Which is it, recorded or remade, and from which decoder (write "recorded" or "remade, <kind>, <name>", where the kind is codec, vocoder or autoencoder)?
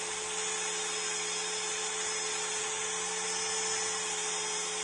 recorded